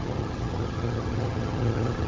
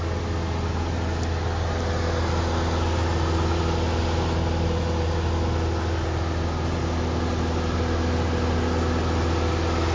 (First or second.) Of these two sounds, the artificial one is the first